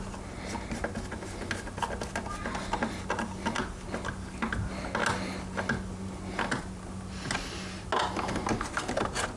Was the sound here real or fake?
real